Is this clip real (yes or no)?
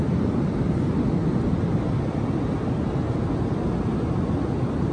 yes